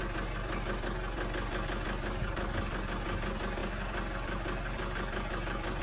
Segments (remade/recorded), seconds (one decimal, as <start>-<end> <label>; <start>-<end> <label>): 0.0-5.8 recorded